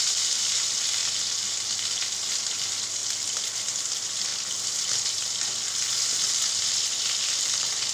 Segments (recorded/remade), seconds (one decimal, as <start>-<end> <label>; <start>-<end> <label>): 0.0-1.0 remade; 1.0-2.4 recorded; 2.4-3.0 remade; 3.0-3.8 recorded; 3.8-4.3 remade; 4.3-6.7 recorded; 6.7-7.9 remade